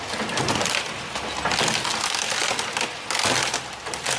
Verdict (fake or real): real